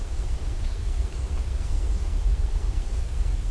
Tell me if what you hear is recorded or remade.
remade